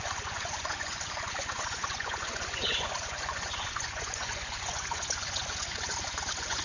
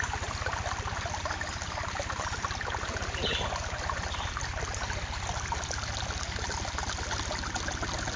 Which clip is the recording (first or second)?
second